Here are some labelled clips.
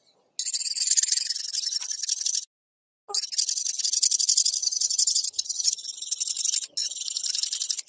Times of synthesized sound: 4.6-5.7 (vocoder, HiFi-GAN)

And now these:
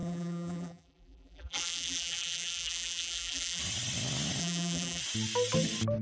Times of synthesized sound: 0.0-3.6 (vocoder, BigVGAN v2); 4.4-5.0

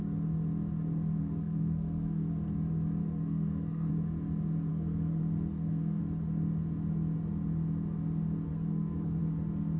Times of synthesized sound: 1.2-2.3 (codec, SNAC); 3.0-3.9; 4.7-6.0; 8.5-9.2

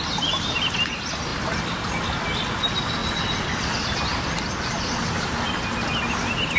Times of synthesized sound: none

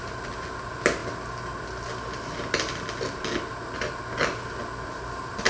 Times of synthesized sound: none